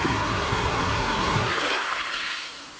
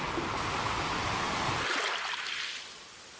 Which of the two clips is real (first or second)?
second